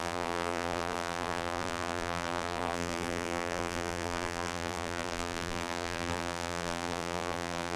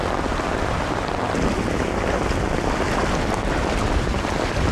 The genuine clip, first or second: second